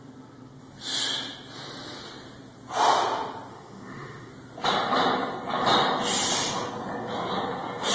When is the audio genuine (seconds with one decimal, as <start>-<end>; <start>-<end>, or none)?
0.0-3.5; 4.3-7.9